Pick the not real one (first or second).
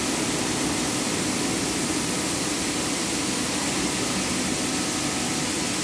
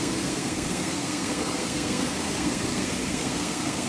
second